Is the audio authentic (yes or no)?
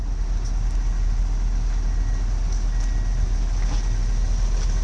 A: yes